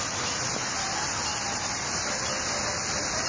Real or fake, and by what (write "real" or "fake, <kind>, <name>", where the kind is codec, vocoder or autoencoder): real